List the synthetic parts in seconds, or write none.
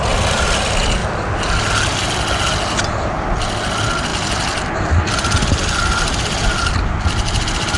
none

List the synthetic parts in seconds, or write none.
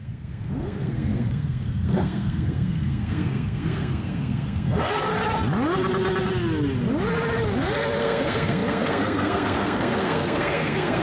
0.0-5.1 (codec, SNAC); 8.0-11.0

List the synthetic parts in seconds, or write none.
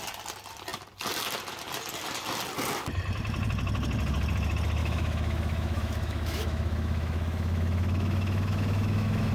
4.8-9.3 (autoencoder, DAC-VAE)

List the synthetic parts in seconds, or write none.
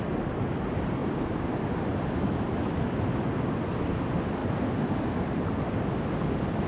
none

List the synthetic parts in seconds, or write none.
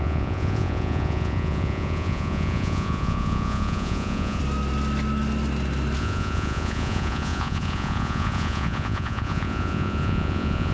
0.0-4.4 (vocoder, Vocos); 6.0-10.7